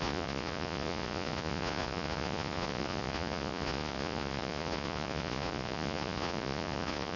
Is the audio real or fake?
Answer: fake